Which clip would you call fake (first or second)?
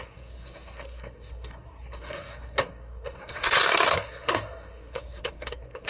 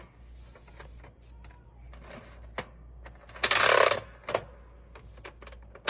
first